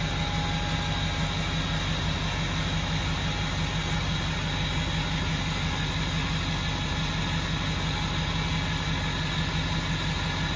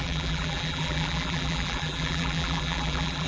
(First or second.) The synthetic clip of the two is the second